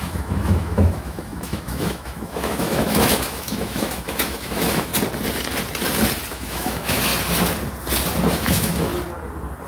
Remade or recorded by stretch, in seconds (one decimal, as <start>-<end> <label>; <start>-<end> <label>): 0.0-4.9 remade; 4.9-6.3 recorded; 6.3-7.1 remade; 7.1-8.3 recorded; 8.3-8.9 remade; 8.9-9.7 recorded

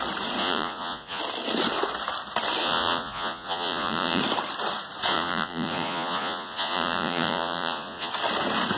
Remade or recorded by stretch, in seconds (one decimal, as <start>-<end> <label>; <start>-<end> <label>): 0.0-0.4 recorded; 0.4-1.2 remade; 1.2-2.6 recorded; 2.6-4.2 remade; 4.2-5.1 recorded; 5.1-8.1 remade; 8.1-8.8 recorded

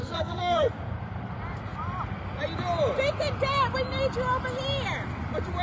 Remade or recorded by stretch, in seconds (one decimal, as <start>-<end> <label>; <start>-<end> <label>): 0.0-0.7 remade; 0.7-5.6 recorded

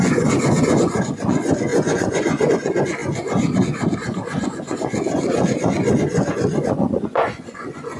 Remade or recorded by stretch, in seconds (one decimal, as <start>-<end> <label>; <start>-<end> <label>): 0.0-8.0 remade

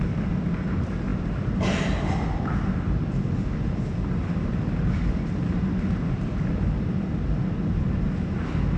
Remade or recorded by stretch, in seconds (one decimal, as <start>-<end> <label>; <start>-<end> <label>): 0.0-8.8 recorded

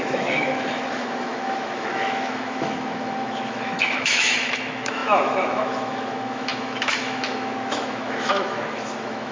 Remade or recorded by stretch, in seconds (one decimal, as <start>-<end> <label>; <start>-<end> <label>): 0.0-9.3 remade